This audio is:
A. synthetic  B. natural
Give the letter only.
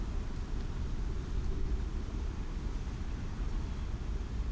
B